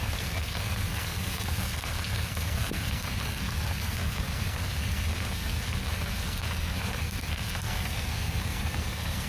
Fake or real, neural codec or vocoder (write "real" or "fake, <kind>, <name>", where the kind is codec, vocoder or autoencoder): fake, codec, SNAC